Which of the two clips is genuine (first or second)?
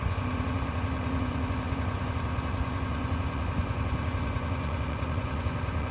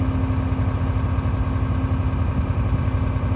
second